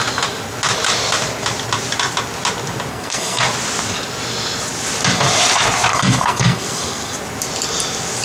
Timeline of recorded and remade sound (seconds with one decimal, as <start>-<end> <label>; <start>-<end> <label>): 0.0-2.9 recorded; 2.9-3.4 remade; 3.4-5.9 recorded; 5.9-7.1 remade; 7.1-8.2 recorded